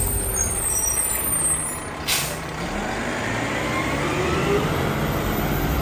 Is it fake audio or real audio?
real